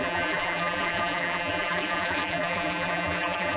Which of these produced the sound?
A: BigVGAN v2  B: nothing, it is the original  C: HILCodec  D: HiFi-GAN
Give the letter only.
A